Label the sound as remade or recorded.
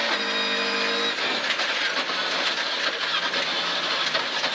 recorded